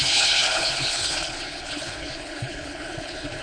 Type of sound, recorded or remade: remade